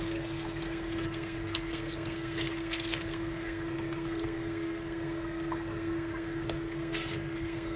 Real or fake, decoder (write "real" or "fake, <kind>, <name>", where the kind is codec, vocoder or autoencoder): fake, codec, SNAC